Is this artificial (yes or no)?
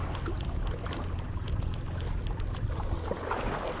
no